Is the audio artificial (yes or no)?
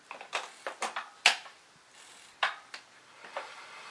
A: no